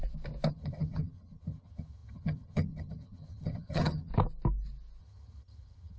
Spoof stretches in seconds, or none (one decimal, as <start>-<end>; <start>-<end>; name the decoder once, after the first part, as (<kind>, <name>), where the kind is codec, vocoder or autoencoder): 0.5-4.1 (vocoder, HiFi-GAN); 5.0-6.0